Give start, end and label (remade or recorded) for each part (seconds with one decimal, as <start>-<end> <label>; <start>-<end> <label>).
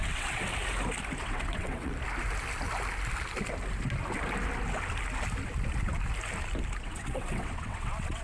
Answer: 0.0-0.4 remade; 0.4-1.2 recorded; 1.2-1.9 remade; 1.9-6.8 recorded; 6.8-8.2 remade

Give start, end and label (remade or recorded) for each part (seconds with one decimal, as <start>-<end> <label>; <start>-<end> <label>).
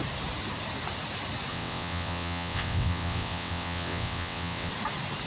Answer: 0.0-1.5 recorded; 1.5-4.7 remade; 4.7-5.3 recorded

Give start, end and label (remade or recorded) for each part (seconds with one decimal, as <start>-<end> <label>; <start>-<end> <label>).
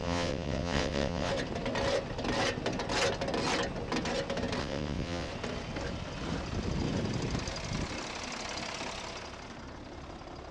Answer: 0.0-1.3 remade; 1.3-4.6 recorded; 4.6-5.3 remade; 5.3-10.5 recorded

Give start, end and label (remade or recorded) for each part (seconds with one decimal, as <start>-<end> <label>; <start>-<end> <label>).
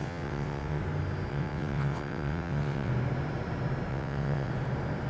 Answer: 0.0-0.8 remade; 0.8-1.3 recorded; 1.3-2.9 remade; 2.9-3.9 recorded; 3.9-4.5 remade; 4.5-5.1 recorded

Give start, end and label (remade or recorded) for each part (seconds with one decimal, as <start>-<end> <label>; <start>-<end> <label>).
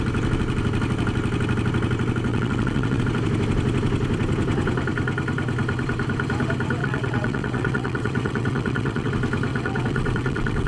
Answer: 0.0-2.3 recorded; 2.3-3.0 remade; 3.0-6.8 recorded; 6.8-9.1 remade; 9.1-9.5 recorded; 9.5-10.7 remade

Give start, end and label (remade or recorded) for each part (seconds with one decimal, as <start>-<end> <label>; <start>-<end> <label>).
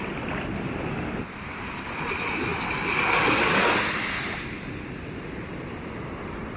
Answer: 0.0-6.6 recorded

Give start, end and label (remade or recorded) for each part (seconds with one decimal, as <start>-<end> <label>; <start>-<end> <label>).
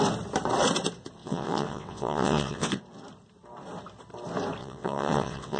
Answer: 0.0-1.2 recorded; 1.2-2.8 remade; 2.8-4.6 recorded; 4.6-5.6 remade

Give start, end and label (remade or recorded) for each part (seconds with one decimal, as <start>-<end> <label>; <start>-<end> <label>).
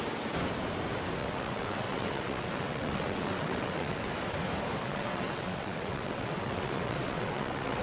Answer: 0.0-1.2 recorded; 1.2-4.1 remade; 4.1-4.8 recorded; 4.8-7.8 remade